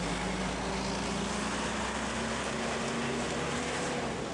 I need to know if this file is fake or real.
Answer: real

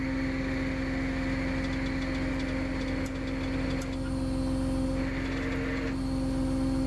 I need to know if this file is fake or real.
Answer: real